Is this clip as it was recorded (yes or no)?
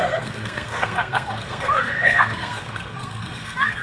no